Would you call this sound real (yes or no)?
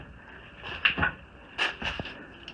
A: yes